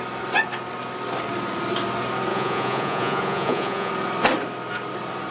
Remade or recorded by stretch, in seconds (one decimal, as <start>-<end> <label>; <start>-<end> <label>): 0.0-2.3 recorded; 2.3-3.9 remade; 3.9-5.3 recorded